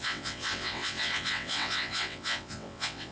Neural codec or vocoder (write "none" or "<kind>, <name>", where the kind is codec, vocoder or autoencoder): vocoder, WaveNeXt